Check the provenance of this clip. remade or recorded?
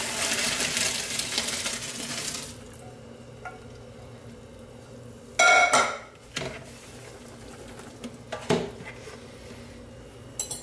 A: recorded